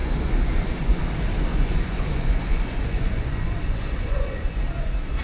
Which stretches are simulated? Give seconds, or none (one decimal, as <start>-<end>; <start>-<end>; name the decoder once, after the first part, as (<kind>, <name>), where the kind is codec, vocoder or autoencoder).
0.0-1.0 (vocoder, Vocos); 1.5-4.6